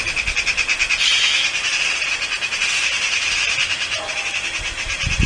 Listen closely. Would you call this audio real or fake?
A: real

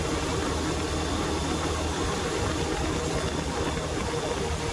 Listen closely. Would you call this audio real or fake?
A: real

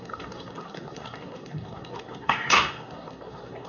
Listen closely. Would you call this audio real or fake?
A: fake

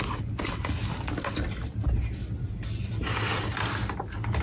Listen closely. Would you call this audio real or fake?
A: real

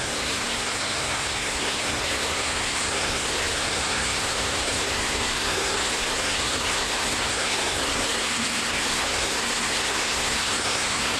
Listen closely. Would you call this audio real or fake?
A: fake